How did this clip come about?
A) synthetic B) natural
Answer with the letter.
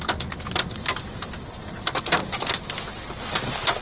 B